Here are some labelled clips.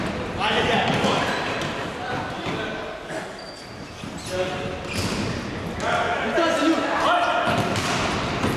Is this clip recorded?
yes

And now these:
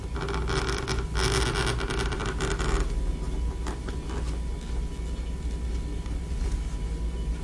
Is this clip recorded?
yes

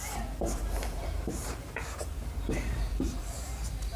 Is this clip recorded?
no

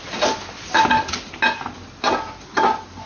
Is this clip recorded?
yes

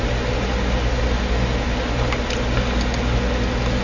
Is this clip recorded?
yes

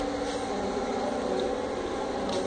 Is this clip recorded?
yes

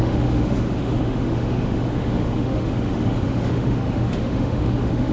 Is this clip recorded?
no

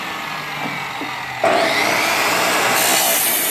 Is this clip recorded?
yes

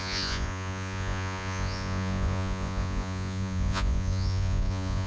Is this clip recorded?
no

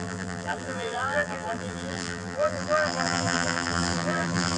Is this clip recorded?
no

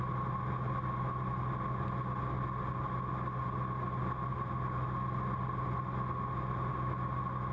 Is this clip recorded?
yes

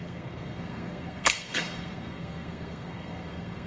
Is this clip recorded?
no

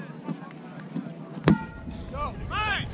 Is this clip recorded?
no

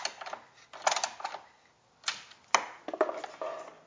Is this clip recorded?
yes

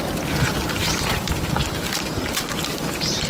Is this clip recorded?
no